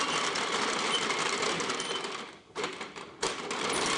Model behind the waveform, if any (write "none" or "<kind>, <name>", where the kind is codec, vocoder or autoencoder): none